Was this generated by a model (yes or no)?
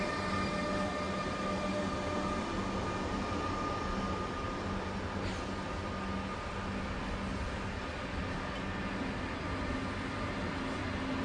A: no